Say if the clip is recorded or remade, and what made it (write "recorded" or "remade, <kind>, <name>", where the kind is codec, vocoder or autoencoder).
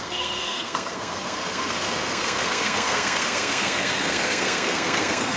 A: remade, codec, SNAC